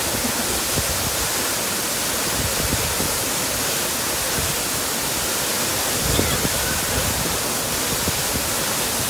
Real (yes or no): yes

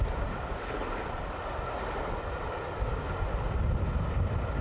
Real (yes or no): yes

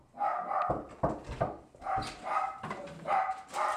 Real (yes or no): yes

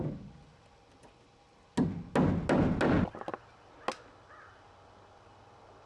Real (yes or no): yes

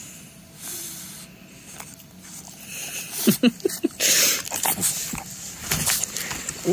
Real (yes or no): no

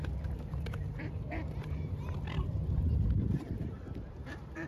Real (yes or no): no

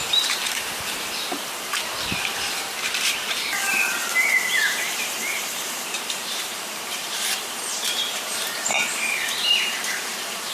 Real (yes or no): no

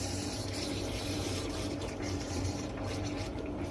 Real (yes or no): no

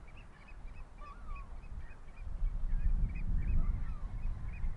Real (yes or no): no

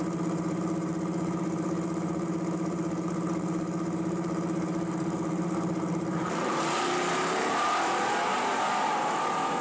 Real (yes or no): no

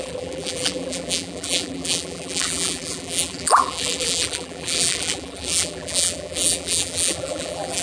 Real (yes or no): no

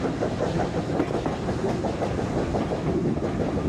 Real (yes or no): yes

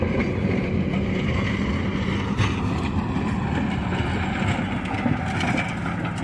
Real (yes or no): yes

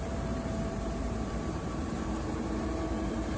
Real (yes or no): no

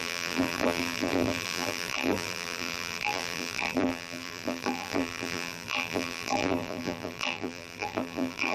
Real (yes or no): no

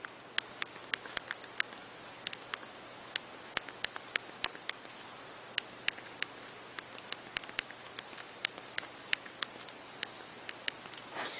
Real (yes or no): yes